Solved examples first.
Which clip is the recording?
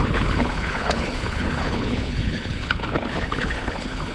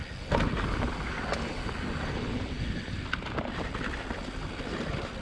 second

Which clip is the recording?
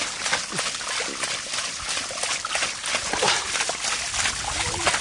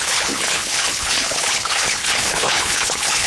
first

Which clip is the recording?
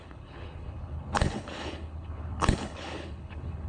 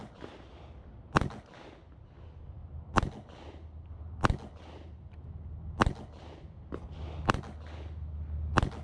second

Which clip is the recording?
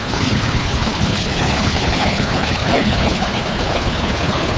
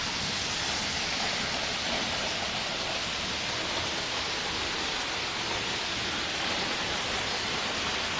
second